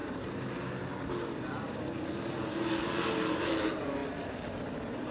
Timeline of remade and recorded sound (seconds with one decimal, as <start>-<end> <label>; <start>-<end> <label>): 0.0-5.1 recorded